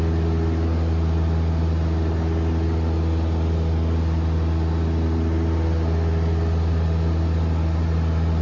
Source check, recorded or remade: recorded